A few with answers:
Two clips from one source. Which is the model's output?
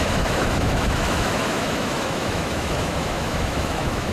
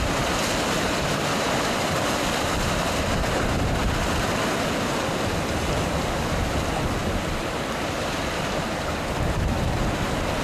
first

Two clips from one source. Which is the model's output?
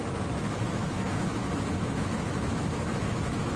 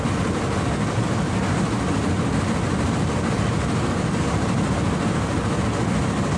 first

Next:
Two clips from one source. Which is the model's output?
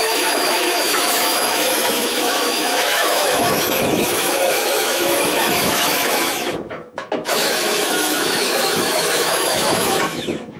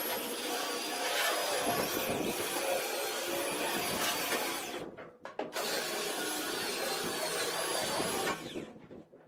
first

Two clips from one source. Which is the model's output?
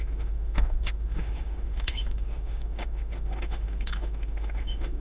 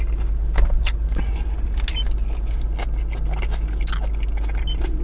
first